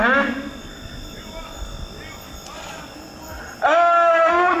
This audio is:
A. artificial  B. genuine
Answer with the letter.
B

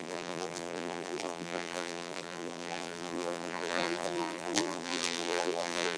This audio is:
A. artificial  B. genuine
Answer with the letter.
A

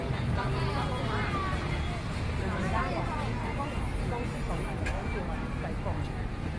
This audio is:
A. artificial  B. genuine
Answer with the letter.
B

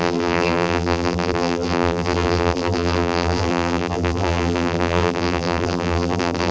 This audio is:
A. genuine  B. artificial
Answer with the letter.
B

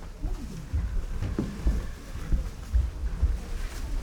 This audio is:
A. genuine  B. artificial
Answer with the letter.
B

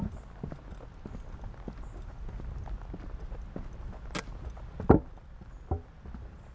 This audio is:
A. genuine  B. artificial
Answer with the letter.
A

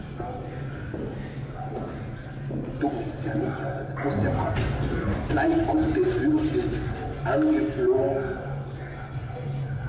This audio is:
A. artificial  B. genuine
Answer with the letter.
B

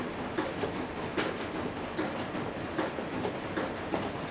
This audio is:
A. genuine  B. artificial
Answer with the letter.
B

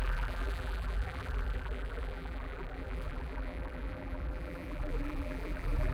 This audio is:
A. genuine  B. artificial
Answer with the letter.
B